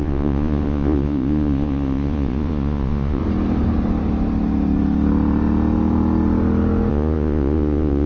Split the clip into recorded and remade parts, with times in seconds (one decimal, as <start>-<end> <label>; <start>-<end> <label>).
0.0-3.2 remade; 3.2-6.9 recorded; 6.9-8.1 remade